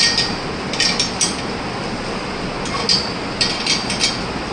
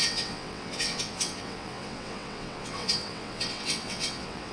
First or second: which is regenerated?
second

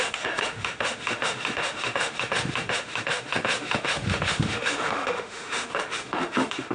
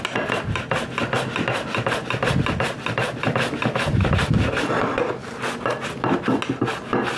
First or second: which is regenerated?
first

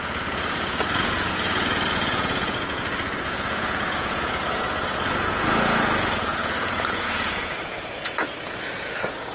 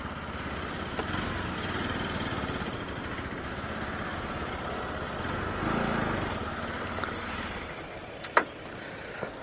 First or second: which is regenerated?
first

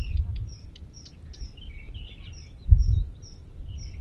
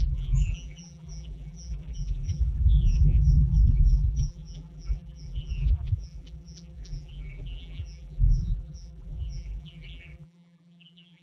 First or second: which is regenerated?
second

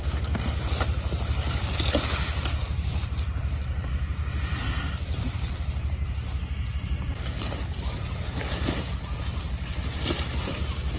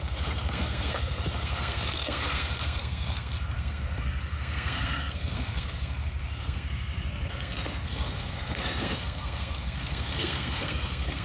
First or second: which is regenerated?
second